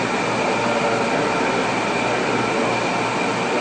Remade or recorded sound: recorded